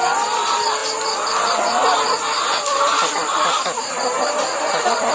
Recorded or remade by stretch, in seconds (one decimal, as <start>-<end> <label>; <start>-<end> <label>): 0.0-5.1 recorded